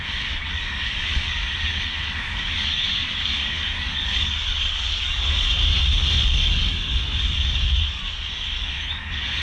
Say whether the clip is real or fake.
fake